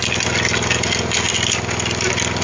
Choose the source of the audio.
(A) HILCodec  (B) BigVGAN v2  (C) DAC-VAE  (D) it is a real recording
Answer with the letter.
D